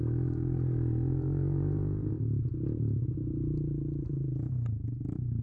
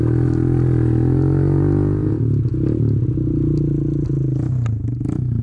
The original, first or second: second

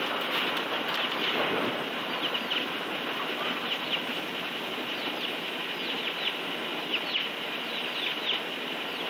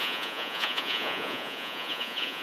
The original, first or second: first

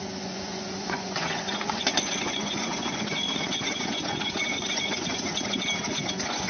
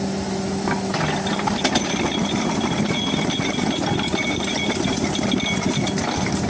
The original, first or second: second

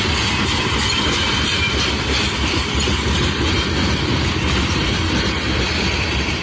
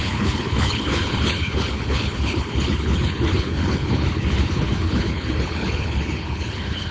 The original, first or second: first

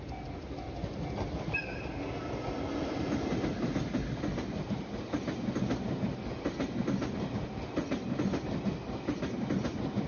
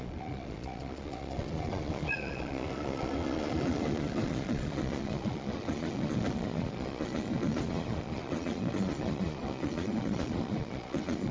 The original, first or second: first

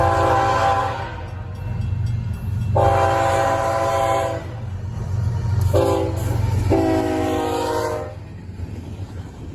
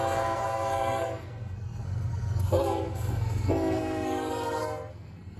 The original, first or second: first